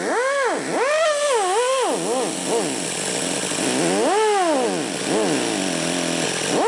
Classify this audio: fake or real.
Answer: real